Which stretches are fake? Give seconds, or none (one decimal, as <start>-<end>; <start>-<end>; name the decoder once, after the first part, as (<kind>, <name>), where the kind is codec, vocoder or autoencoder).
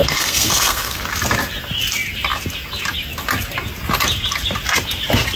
0.0-1.0 (codec, SNAC)